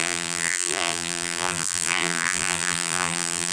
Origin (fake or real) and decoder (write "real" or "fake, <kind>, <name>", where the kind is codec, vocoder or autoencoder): fake, vocoder, BigVGAN v2